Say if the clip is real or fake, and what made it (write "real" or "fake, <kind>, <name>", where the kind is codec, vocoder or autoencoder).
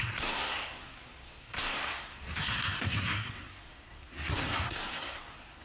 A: fake, codec, SNAC